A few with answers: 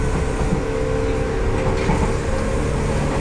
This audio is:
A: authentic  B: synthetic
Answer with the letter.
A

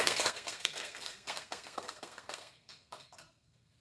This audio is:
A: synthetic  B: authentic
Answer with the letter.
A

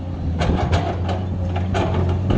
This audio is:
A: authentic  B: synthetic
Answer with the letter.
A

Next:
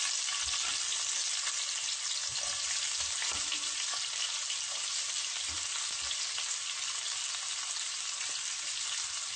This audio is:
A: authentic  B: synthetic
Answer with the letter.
A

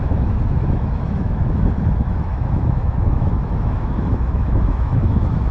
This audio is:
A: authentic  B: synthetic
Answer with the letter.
B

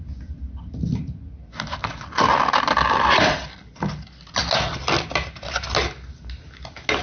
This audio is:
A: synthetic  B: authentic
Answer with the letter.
B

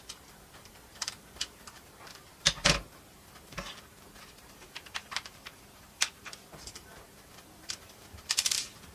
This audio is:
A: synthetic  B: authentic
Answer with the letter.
A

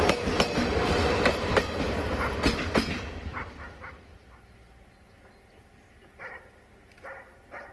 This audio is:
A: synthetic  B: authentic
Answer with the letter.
B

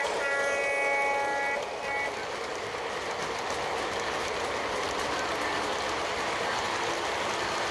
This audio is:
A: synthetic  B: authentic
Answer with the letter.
B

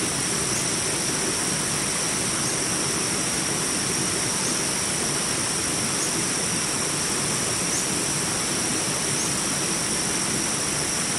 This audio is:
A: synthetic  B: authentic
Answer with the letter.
B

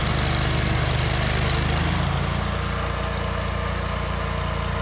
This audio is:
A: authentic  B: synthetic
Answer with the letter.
A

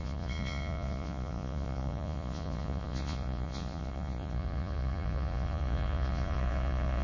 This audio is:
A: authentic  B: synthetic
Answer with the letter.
B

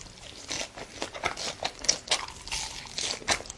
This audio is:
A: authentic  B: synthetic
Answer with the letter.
A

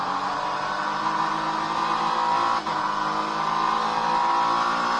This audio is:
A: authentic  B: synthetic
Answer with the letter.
A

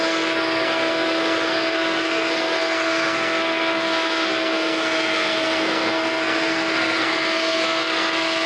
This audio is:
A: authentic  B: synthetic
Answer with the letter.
B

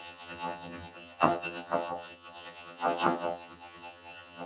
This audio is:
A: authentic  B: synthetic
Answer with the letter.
B